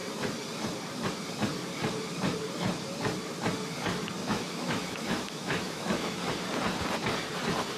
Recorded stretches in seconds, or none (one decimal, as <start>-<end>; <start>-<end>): 0.0-4.2; 6.3-7.8